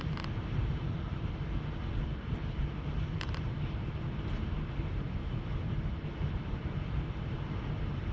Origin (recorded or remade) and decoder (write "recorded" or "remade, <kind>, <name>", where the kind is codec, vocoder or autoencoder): remade, vocoder, BigVGAN v2